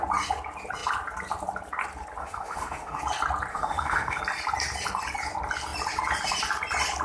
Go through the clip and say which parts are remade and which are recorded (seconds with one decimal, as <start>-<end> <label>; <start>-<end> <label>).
0.0-2.2 recorded; 2.2-3.0 remade; 3.0-3.5 recorded; 3.5-4.2 remade; 4.2-7.0 recorded

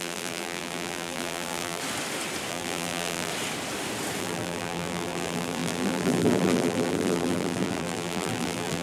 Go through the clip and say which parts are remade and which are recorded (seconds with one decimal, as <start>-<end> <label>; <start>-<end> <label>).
0.0-1.8 remade; 1.8-2.5 recorded; 2.5-3.3 remade; 3.3-4.2 recorded; 4.2-8.8 remade